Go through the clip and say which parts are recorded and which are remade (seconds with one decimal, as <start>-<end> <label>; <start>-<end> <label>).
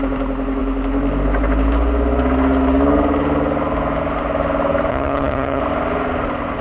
0.0-4.9 recorded; 4.9-5.6 remade; 5.6-6.6 recorded